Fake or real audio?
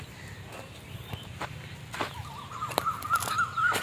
real